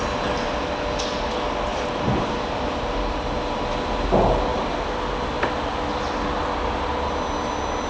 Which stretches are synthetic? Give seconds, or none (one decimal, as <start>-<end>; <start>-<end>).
1.7-3.4